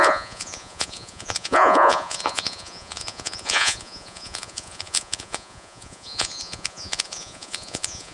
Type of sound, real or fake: fake